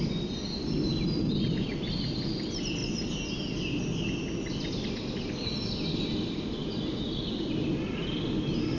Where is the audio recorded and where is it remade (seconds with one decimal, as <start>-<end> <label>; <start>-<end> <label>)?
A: 0.0-8.8 recorded

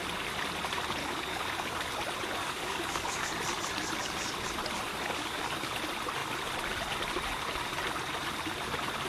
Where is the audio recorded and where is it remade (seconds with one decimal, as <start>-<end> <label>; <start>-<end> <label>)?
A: 0.0-1.0 recorded; 1.0-1.9 remade; 1.9-2.4 recorded; 2.4-3.2 remade; 3.2-4.9 recorded; 4.9-5.7 remade; 5.7-9.1 recorded